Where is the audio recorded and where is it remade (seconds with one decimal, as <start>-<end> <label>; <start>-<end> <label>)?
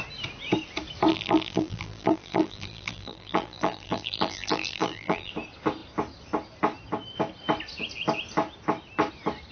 0.0-1.1 recorded; 1.1-5.3 remade; 5.3-9.5 recorded